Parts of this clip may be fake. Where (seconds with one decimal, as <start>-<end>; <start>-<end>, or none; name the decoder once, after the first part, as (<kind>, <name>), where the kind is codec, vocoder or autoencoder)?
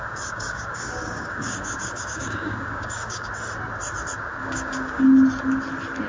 0.0-3.3 (codec, DAC); 4.4-5.0